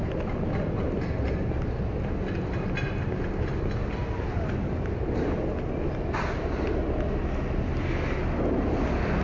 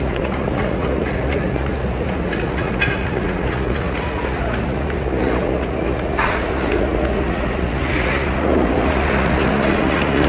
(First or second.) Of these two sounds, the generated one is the second